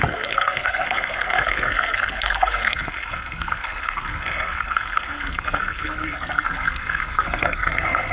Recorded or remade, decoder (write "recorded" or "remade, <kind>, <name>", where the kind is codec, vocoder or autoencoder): remade, codec, SNAC